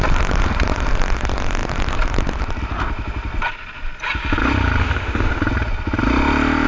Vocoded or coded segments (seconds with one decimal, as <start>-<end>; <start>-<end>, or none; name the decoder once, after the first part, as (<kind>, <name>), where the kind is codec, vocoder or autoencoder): 4.8-5.4 (autoencoder, DAC-VAE)